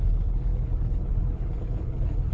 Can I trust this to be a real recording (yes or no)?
no